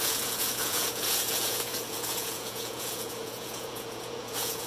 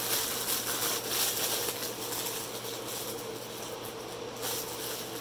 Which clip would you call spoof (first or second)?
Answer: first